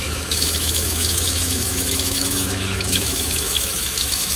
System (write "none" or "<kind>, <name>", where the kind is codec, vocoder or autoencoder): autoencoder, DAC-VAE